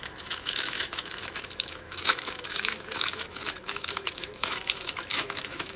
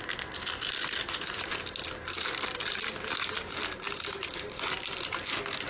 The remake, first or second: first